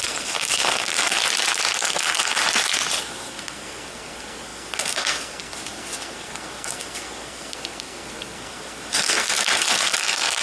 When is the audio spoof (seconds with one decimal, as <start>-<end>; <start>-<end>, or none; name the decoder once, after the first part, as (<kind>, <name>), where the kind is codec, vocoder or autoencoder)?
0.0-1.2 (codec, SNAC); 1.8-2.4; 3.0-10.4